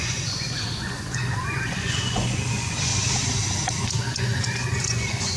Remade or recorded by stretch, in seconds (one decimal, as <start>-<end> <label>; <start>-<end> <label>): 0.0-2.9 remade; 2.9-3.8 recorded; 3.8-5.4 remade